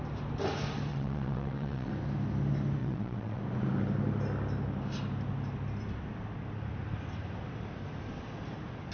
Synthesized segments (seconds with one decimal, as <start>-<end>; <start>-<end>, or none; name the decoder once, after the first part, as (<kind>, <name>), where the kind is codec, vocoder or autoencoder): 0.9-1.9 (vocoder, WaveNeXt); 2.8-3.4